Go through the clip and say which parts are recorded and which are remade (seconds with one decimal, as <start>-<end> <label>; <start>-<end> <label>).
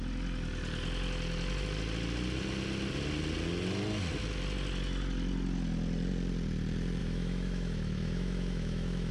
0.0-7.0 recorded; 7.0-9.1 remade